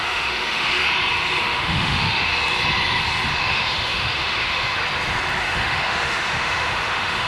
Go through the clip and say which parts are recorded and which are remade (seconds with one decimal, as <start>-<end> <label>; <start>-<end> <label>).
0.0-0.8 remade; 0.8-1.4 recorded; 1.4-2.3 remade; 2.3-3.4 recorded; 3.4-4.8 remade; 4.8-5.4 recorded; 5.4-7.3 remade